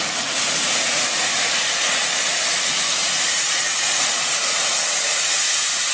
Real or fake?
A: fake